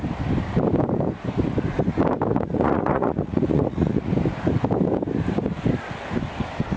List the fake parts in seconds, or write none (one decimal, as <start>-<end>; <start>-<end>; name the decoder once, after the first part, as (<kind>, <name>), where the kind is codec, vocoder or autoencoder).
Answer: 2.3-4.1 (vocoder, Vocos)